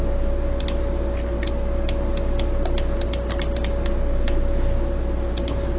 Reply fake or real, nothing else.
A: real